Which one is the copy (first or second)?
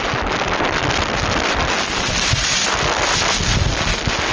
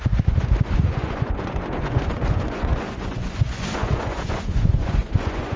second